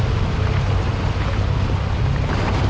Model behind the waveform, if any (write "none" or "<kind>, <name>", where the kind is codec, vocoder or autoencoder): none